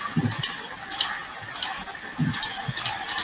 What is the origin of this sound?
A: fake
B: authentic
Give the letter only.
B